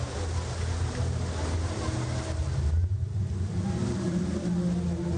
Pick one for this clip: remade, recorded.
recorded